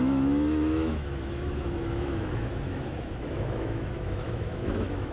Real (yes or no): no